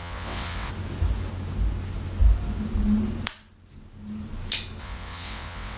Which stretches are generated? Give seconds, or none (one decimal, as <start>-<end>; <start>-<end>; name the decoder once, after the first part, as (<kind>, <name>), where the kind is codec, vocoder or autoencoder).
0.0-0.7 (vocoder, WaveNeXt); 4.8-5.8